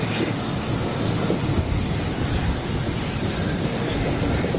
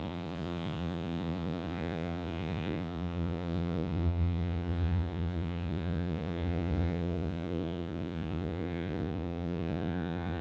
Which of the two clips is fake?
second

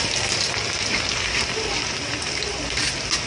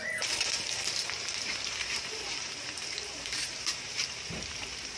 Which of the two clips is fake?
second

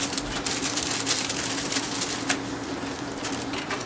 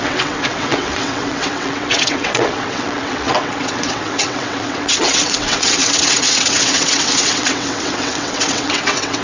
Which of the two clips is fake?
second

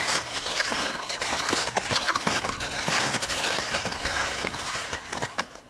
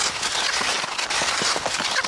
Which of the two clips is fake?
first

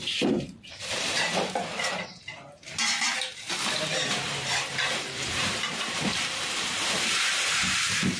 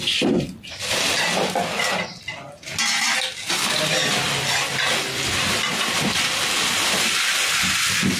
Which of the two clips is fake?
first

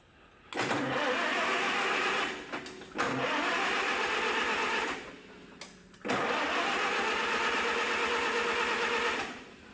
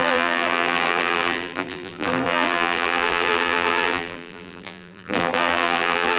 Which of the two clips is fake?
second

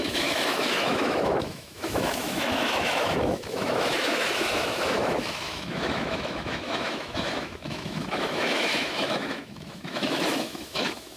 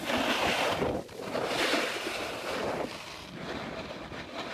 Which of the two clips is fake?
first